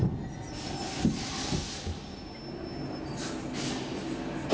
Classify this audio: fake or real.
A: real